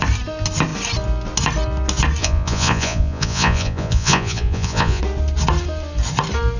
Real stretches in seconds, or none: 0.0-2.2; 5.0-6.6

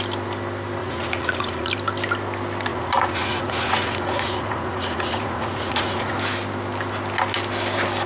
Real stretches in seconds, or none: 0.0-0.8; 1.7-2.7; 6.2-8.1